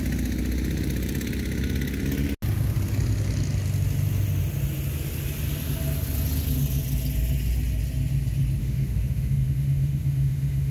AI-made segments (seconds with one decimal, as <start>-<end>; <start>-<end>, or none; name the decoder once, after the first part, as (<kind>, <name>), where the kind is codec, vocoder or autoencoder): 8.6-10.7 (autoencoder, DAC-VAE)